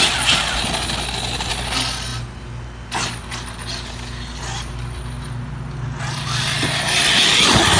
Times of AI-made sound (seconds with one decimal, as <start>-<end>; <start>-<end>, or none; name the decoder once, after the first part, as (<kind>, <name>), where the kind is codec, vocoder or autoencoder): none